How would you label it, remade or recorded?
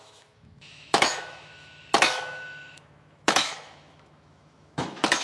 remade